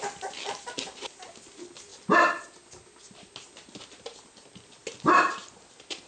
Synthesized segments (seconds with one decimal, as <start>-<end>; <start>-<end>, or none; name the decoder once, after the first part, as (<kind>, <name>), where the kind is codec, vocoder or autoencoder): 4.8-6.1 (vocoder, BigVGAN v2)